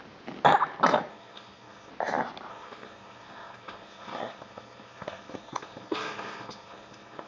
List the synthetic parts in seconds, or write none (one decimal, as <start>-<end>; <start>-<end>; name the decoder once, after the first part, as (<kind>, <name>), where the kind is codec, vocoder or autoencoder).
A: 1.1-1.9 (codec, SNAC); 2.5-7.3